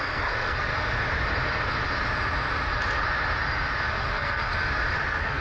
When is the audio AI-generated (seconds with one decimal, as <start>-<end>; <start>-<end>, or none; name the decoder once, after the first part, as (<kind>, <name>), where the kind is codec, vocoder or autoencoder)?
0.0-0.7 (codec, SNAC); 3.9-4.5; 5.0-5.4